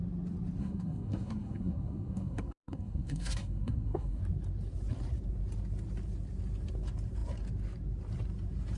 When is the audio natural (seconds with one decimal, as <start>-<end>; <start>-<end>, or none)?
0.0-0.6; 4.2-8.8